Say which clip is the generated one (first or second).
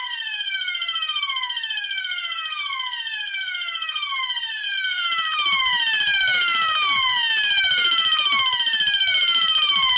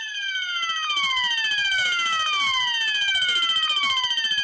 first